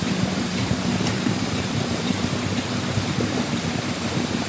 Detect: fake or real fake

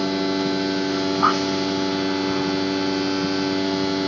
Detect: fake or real real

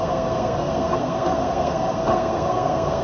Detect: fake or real fake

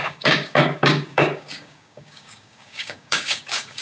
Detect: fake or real fake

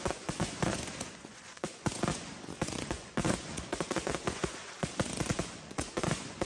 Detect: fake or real fake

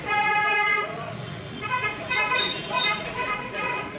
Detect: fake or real fake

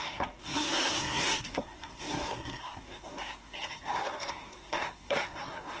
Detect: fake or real fake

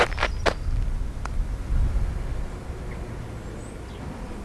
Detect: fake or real real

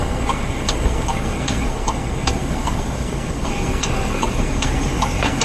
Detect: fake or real fake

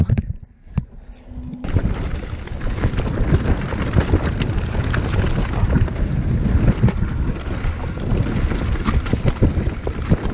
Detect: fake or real real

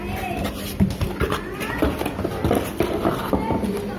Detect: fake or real real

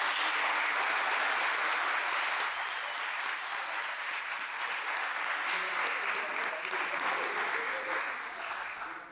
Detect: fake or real real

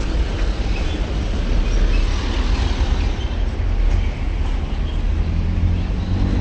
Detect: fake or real real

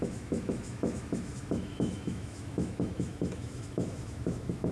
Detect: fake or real fake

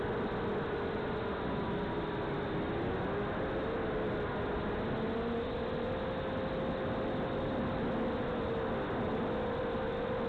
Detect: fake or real real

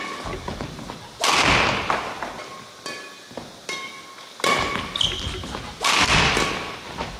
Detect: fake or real real